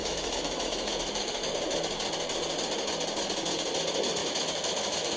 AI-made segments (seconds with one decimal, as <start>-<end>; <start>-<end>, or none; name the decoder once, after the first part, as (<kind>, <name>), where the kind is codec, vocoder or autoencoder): 0.0-1.5 (autoencoder, DAC-VAE); 4.2-5.2